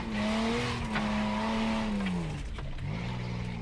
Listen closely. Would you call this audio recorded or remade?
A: recorded